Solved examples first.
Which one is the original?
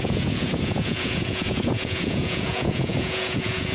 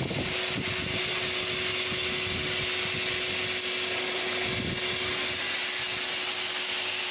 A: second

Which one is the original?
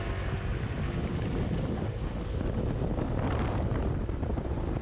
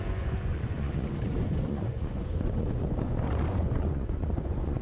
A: first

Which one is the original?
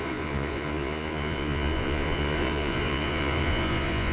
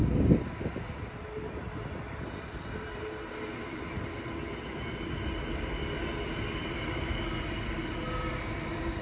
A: second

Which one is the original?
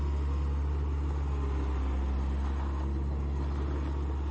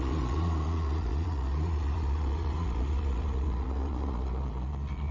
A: first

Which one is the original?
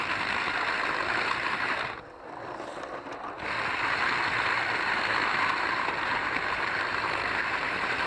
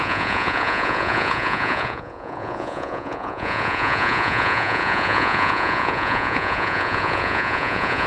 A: first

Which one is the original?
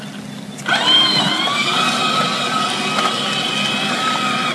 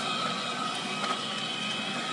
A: first